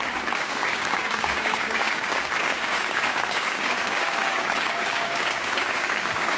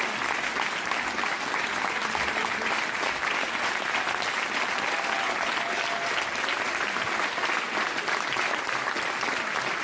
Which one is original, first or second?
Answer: second